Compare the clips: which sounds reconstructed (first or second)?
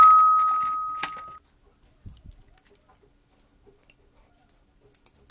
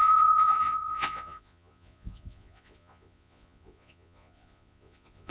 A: second